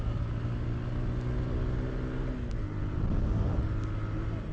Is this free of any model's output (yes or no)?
yes